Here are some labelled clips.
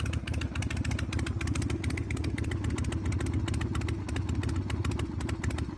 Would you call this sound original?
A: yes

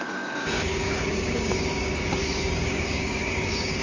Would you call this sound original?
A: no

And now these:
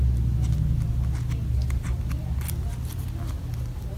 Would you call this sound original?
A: yes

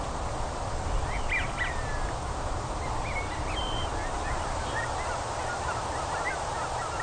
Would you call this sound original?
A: yes